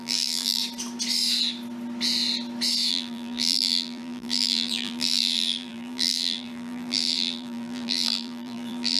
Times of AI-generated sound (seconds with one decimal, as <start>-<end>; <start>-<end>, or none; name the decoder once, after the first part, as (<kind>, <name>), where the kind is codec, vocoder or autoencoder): 0.0-0.6 (vocoder, BigVGAN v2); 2.9-9.0

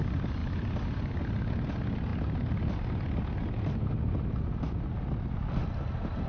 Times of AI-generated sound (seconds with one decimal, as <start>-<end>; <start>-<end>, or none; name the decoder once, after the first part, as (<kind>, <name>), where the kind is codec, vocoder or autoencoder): none

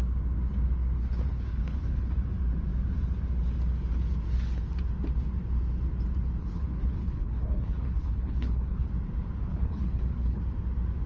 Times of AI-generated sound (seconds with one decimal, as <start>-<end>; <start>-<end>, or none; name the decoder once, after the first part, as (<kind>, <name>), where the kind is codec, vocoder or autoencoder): 1.0-2.1 (codec, HILCodec); 6.4-8.9; 9.5-10.4

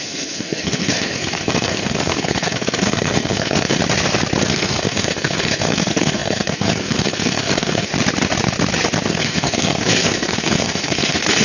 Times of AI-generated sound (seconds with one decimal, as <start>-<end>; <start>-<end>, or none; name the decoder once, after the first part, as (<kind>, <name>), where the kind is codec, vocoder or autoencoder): 0.0-3.8 (codec, SNAC); 4.4-7.9; 9.1-11.4

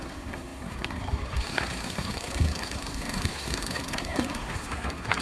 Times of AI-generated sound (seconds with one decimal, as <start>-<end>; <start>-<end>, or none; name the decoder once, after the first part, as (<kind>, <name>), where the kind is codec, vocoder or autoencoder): 0.0-5.2 (codec, SNAC)